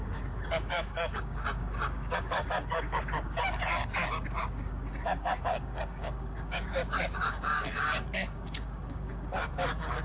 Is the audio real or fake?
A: fake